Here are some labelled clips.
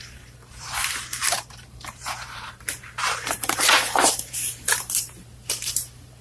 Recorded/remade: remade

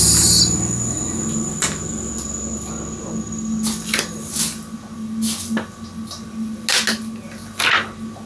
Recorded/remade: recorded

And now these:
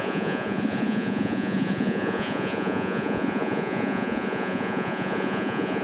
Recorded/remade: remade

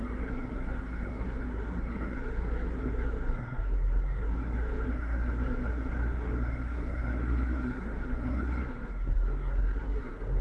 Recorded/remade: remade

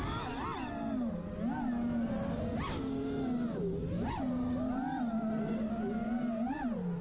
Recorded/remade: recorded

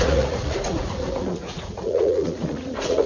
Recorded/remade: remade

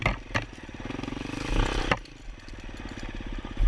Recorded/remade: recorded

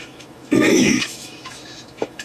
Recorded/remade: remade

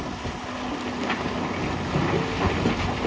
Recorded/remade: recorded